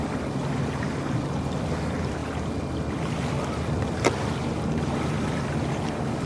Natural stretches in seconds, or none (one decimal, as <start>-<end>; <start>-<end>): 0.0-6.3